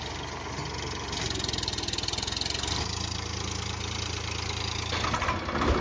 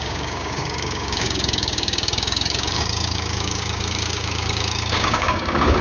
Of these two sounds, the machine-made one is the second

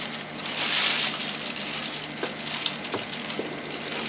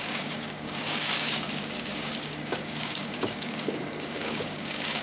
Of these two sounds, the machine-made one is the second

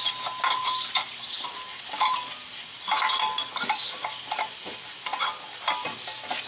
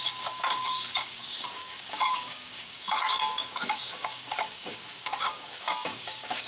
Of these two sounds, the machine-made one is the second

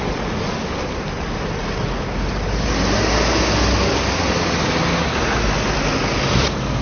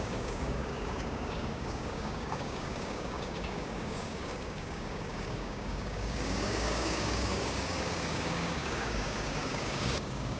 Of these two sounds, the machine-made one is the second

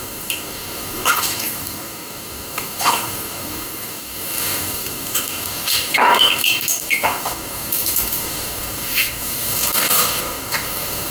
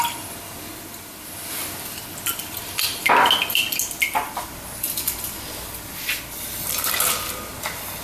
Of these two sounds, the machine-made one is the first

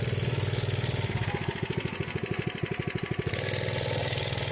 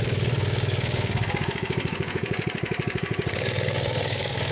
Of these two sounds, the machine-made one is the second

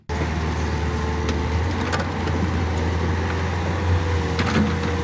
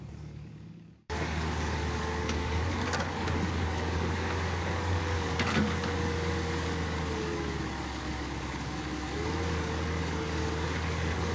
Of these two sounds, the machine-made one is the second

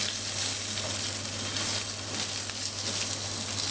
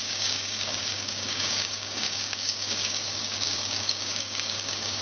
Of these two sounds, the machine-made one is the second